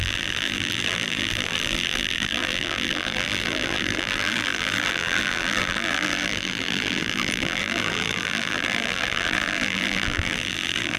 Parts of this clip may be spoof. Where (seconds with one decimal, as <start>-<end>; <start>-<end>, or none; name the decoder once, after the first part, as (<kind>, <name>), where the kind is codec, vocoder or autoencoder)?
0.0-11.0 (vocoder, BigVGAN v2)